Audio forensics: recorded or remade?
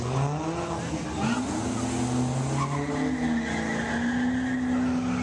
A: recorded